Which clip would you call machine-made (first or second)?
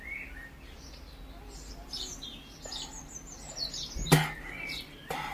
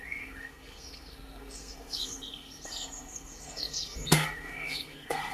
second